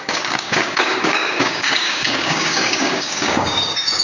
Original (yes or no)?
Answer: no